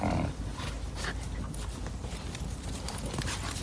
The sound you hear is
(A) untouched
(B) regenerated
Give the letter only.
A